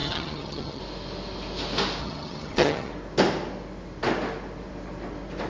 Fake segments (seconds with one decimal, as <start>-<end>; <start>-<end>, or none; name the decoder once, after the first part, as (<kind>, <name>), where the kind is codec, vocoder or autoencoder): 0.0-0.8 (vocoder, HiFi-GAN); 2.0-2.9